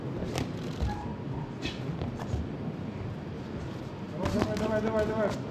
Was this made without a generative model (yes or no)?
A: yes